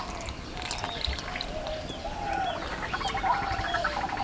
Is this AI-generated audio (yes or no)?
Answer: no